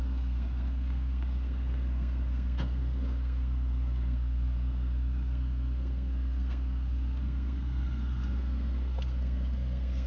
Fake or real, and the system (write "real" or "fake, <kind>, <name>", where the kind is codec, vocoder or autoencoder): fake, codec, SNAC